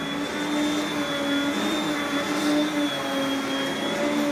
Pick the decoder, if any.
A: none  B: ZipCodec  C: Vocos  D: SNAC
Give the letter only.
A